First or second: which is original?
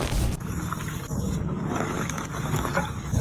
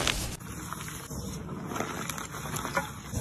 second